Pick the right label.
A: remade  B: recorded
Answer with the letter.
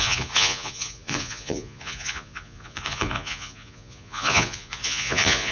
A